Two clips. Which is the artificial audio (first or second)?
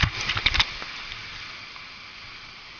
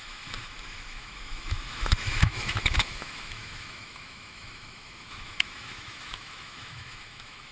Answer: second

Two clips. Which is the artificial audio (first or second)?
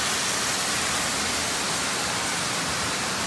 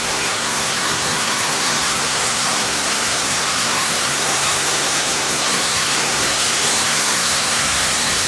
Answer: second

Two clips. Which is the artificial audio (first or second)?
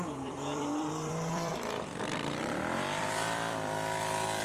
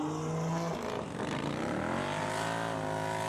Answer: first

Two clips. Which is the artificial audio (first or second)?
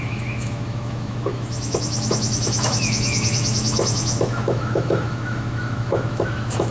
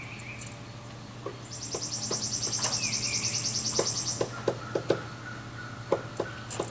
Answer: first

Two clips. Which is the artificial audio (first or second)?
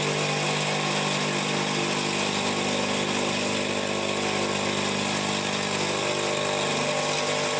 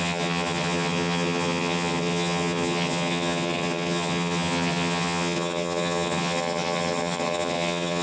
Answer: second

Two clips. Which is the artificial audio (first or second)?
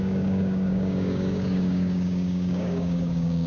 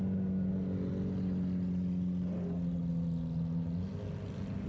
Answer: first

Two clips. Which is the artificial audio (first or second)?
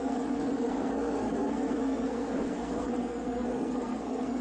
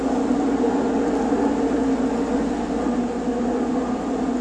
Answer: first